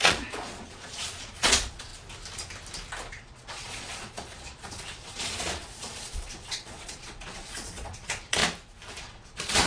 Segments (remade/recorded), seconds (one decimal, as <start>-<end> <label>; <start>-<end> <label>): 0.0-1.9 remade; 1.9-3.1 recorded; 3.1-8.4 remade; 8.4-9.0 recorded; 9.0-9.7 remade

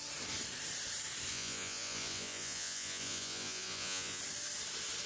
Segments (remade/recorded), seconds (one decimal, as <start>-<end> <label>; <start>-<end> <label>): 0.0-1.3 recorded; 1.3-4.2 remade; 4.2-5.1 recorded

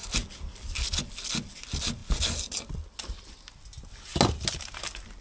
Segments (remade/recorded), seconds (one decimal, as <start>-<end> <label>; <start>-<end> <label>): 0.0-5.2 recorded

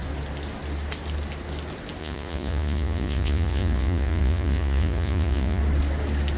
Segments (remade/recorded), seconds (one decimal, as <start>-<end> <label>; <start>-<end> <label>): 0.0-2.0 recorded; 2.0-5.6 remade; 5.6-6.4 recorded

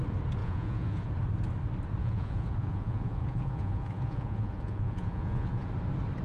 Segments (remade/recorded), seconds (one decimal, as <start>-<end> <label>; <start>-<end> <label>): 0.0-0.4 recorded; 0.4-1.1 remade; 1.1-2.0 recorded; 2.0-5.7 remade; 5.7-6.2 recorded

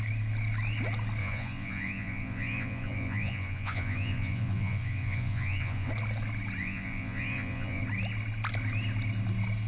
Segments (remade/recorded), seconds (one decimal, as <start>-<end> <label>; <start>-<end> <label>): 0.0-1.2 recorded; 1.2-5.9 remade; 5.9-6.6 recorded; 6.6-7.8 remade; 7.8-9.7 recorded

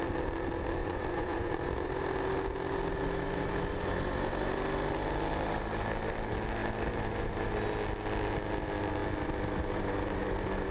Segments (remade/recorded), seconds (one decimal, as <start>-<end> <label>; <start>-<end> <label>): 0.0-0.8 recorded; 0.8-1.9 remade; 1.9-10.7 recorded